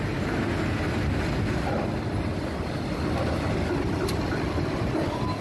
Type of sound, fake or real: real